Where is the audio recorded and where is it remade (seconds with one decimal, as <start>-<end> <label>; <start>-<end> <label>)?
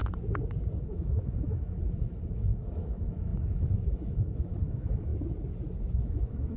0.0-0.8 recorded; 0.8-5.1 remade; 5.1-6.0 recorded; 6.0-6.6 remade